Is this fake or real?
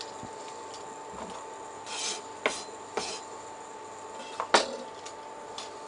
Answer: real